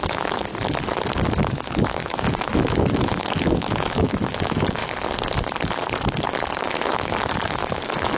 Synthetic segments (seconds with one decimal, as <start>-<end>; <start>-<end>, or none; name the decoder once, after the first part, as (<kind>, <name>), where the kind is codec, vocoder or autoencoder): 0.0-0.5 (autoencoder, DAC-VAE); 1.5-4.8; 6.6-8.2